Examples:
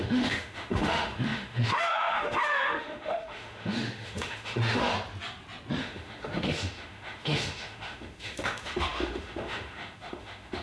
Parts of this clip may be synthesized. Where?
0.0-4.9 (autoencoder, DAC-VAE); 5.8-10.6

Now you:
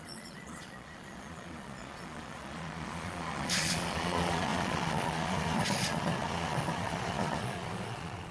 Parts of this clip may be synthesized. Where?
0.0-8.3 (vocoder, Vocos)

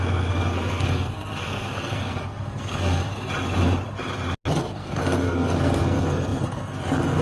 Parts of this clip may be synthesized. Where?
0.0-3.0 (codec, SNAC); 4.6-7.2

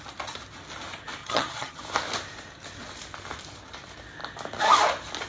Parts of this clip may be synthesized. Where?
1.2-1.8 (vocoder, HiFi-GAN)

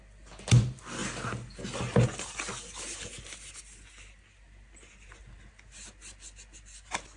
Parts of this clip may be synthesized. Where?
none

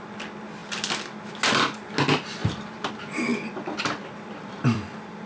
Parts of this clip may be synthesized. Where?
2.4-2.9 (vocoder, BigVGAN v2); 3.3-5.3

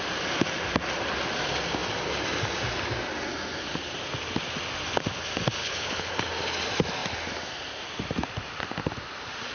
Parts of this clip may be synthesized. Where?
5.6-6.1 (codec, HILCodec)